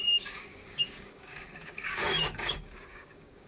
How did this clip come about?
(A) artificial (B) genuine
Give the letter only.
A